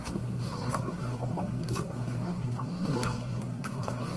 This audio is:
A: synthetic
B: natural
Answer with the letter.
A